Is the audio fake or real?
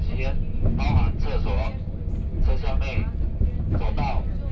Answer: real